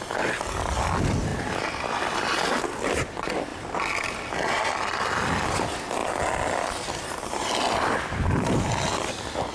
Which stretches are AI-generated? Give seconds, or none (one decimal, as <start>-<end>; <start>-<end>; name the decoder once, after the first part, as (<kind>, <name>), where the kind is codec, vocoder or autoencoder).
none